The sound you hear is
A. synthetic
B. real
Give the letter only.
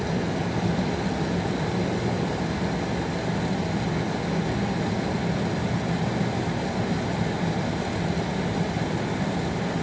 B